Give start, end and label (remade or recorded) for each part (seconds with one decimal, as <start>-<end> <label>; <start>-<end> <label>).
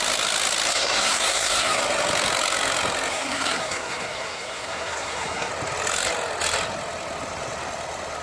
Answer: 0.0-0.7 recorded; 0.7-1.8 remade; 1.8-3.1 recorded; 3.1-5.5 remade; 5.5-8.2 recorded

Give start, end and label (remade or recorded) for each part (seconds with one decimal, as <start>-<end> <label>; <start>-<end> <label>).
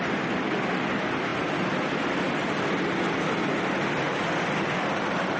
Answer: 0.0-5.4 recorded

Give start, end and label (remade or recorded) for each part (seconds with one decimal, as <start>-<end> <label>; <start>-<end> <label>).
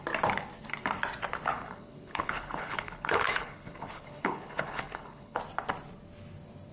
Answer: 0.0-1.5 recorded; 1.5-5.4 remade; 5.4-6.7 recorded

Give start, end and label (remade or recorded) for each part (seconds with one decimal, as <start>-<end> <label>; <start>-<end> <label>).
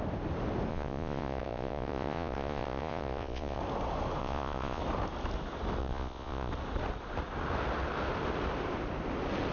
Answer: 0.0-0.7 recorded; 0.7-3.6 remade; 3.6-4.2 recorded; 4.2-4.8 remade; 4.8-5.8 recorded; 5.8-6.5 remade; 6.5-9.5 recorded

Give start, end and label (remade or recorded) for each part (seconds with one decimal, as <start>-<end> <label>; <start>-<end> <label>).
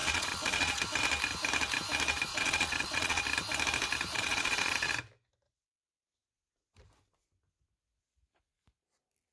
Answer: 0.0-0.8 remade; 0.8-2.3 recorded; 2.3-3.2 remade; 3.2-4.1 recorded; 4.1-4.9 remade; 4.9-9.3 recorded